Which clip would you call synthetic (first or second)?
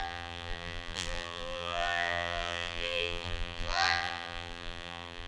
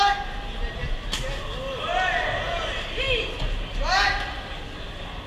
first